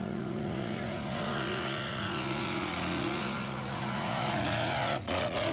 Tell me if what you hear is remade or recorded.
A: remade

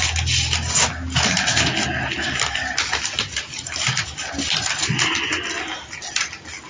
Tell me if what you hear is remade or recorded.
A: recorded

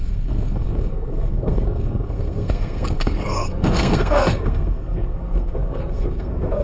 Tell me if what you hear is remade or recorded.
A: remade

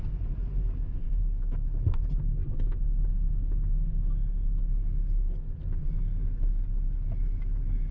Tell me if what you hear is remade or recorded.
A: recorded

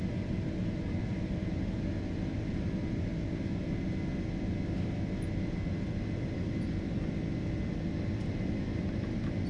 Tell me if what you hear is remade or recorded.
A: recorded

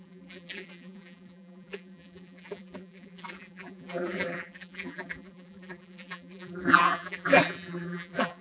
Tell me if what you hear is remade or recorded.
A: remade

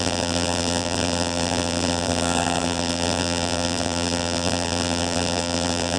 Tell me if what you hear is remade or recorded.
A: remade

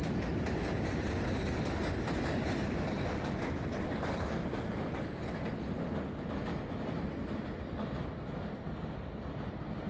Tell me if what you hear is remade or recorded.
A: recorded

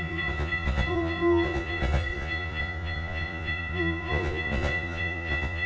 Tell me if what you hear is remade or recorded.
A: remade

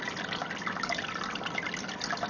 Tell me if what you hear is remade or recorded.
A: recorded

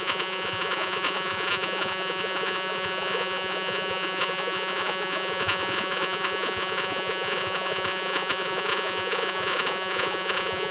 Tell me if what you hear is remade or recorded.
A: remade